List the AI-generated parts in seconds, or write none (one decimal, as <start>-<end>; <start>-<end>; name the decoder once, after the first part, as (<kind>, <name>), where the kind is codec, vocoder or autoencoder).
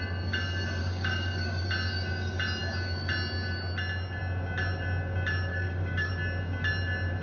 0.8-1.7 (codec, DAC); 5.5-6.1